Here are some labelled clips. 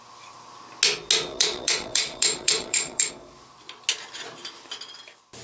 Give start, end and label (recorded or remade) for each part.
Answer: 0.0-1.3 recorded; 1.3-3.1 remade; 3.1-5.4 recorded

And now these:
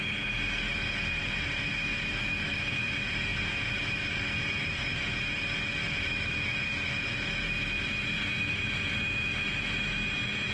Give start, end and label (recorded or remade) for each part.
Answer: 0.0-10.5 remade

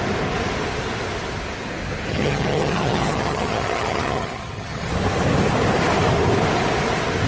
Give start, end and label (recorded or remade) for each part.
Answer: 0.0-2.1 recorded; 2.1-4.9 remade; 4.9-7.3 recorded

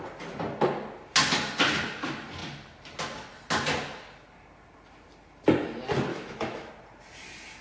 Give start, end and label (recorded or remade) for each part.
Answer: 0.0-6.1 recorded; 6.1-6.7 remade; 6.7-7.6 recorded

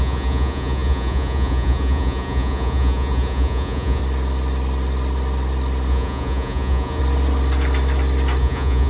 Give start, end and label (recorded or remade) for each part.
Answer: 0.0-4.0 remade; 4.0-5.9 recorded; 5.9-7.0 remade; 7.0-8.4 recorded; 8.4-8.9 remade

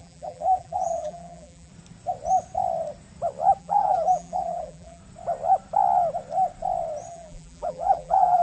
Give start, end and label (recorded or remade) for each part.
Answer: 0.0-1.7 remade; 1.7-3.6 recorded; 3.6-5.0 remade; 5.0-7.1 recorded; 7.1-8.4 remade

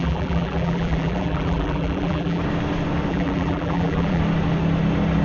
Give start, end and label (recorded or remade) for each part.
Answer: 0.0-2.4 remade; 2.4-3.1 recorded; 3.1-4.2 remade; 4.2-5.2 recorded